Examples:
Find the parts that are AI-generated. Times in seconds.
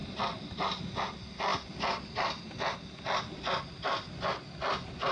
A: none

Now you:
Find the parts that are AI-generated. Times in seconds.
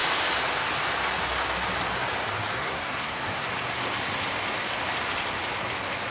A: 2.6-3.5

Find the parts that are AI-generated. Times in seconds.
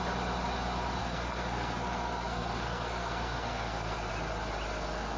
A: 1.0-4.1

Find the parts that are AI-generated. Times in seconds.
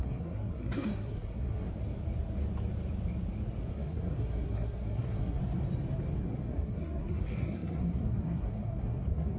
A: 0.0-1.7; 3.7-5.4; 6.2-9.4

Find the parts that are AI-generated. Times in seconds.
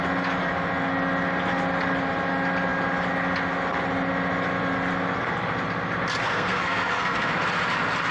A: 6.2-7.3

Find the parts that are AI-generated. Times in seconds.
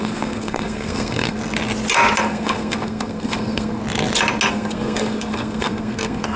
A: 0.0-1.4; 2.2-3.8; 4.5-6.4